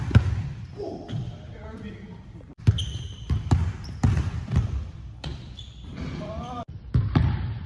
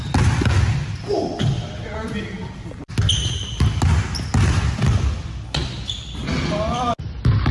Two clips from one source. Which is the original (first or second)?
second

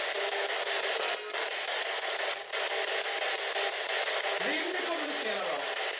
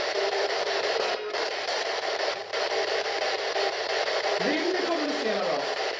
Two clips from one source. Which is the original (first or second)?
first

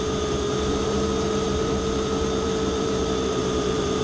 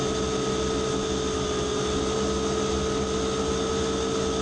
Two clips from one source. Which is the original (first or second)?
second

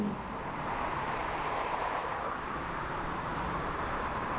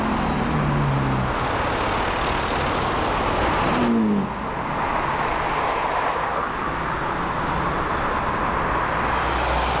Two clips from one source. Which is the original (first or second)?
second